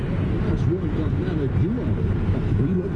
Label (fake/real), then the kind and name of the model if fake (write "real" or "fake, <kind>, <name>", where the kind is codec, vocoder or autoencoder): real